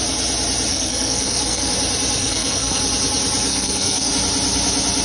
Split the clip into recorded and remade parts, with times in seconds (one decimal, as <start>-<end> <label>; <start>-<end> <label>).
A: 0.0-0.7 recorded; 0.7-1.7 remade; 1.7-2.2 recorded; 2.2-2.8 remade; 2.8-3.5 recorded; 3.5-4.1 remade; 4.1-5.0 recorded

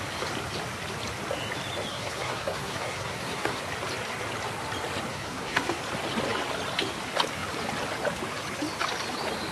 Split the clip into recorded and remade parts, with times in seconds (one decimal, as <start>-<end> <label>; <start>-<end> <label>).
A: 0.0-1.9 recorded; 1.9-3.6 remade; 3.6-5.1 recorded; 5.1-5.8 remade; 5.8-9.5 recorded

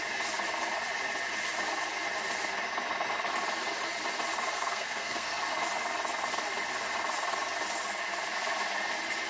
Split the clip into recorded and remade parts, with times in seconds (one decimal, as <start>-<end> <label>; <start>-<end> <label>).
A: 0.0-4.5 recorded; 4.5-5.4 remade; 5.4-9.3 recorded

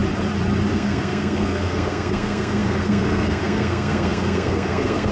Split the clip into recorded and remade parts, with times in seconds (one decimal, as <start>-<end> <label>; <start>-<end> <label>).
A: 0.0-0.7 recorded; 0.7-5.1 remade